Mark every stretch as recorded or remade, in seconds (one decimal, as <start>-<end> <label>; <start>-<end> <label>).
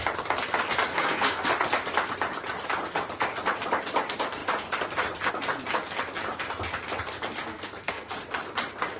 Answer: 0.0-0.9 recorded; 0.9-1.5 remade; 1.5-7.5 recorded; 7.5-8.1 remade; 8.1-9.0 recorded